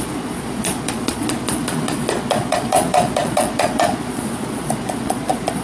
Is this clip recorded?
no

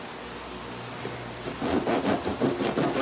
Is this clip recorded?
yes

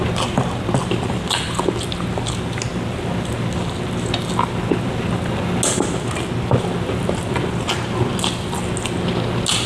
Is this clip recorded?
yes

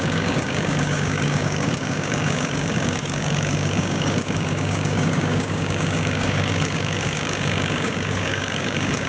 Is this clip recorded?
no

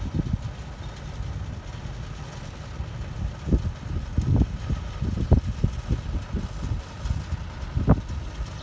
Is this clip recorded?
yes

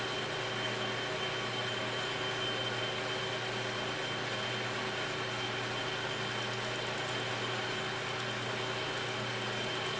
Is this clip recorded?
yes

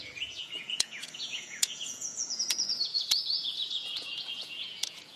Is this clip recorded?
no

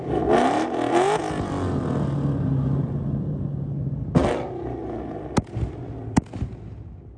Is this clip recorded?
yes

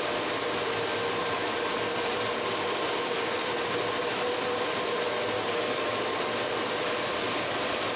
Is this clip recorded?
yes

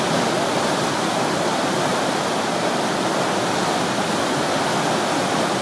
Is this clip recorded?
yes